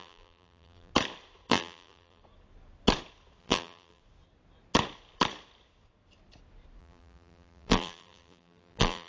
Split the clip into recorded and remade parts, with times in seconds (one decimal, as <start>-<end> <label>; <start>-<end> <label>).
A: 0.0-0.9 remade; 0.9-1.5 recorded; 1.5-2.2 remade; 2.2-3.4 recorded; 3.4-4.0 remade; 4.0-6.8 recorded; 6.8-9.1 remade